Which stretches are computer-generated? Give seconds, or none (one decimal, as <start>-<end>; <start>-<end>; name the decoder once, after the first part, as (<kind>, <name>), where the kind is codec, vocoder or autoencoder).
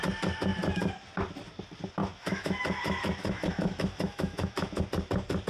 2.0-4.8 (autoencoder, DAC-VAE)